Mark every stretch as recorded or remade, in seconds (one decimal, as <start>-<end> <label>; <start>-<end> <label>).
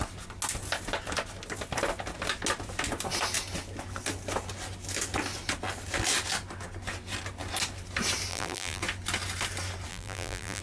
0.0-8.3 recorded; 8.3-8.8 remade; 8.8-9.9 recorded; 9.9-10.6 remade